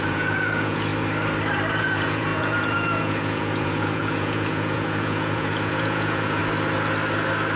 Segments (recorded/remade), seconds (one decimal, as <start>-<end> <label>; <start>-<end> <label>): 0.0-0.9 remade; 0.9-1.8 recorded; 1.8-6.4 remade; 6.4-7.6 recorded